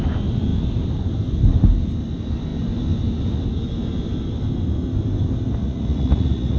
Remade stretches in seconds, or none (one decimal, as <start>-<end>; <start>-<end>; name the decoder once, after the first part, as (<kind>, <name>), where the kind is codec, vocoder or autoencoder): 5.6-6.6 (vocoder, Vocos)